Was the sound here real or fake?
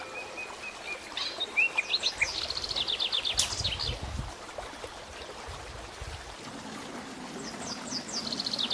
real